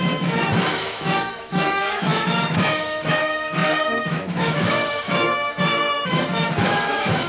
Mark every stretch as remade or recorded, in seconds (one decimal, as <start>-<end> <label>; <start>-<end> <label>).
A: 0.0-7.3 remade